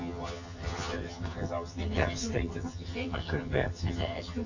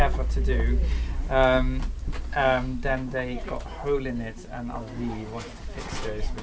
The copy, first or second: first